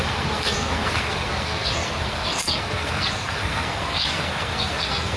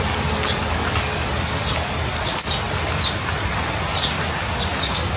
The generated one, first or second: first